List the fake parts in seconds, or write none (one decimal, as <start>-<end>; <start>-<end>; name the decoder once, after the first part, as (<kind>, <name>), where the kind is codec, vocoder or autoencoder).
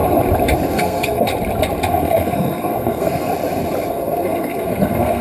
0.7-1.3 (codec, SNAC); 1.9-3.3; 3.9-5.2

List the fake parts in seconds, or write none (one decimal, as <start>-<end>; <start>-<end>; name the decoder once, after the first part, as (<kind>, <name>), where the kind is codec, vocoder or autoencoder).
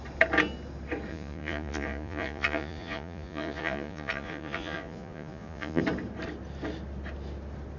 1.1-5.8 (vocoder, Vocos)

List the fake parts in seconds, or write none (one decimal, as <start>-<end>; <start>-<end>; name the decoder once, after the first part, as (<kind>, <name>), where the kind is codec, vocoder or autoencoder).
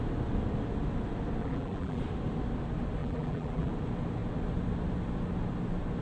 1.4-2.0 (vocoder, BigVGAN v2); 3.0-3.7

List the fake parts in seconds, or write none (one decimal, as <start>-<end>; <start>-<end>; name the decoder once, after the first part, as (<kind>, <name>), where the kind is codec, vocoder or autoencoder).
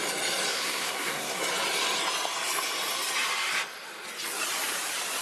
0.5-1.4 (codec, SNAC)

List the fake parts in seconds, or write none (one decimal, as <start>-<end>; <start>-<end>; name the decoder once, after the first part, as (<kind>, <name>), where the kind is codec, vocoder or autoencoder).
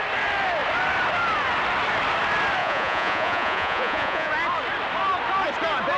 2.6-4.3 (vocoder, Vocos)